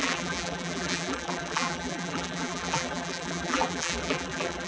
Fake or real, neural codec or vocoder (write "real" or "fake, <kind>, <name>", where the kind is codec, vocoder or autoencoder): fake, vocoder, BigVGAN v2